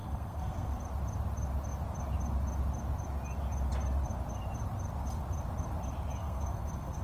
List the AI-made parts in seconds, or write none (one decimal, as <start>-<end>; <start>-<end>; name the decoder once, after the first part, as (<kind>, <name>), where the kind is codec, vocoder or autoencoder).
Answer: 0.0-0.8 (codec, SNAC); 6.2-7.0